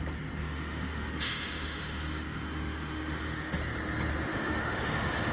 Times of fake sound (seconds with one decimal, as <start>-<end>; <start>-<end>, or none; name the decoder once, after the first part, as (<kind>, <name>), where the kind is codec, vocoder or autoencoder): 0.4-3.6 (autoencoder, DAC-VAE); 4.3-5.3